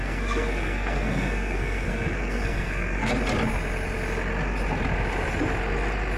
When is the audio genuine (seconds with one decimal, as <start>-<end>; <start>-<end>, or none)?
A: 3.1-6.2